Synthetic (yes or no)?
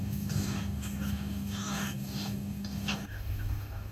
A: yes